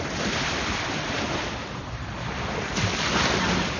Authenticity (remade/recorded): recorded